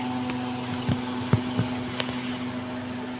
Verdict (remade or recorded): recorded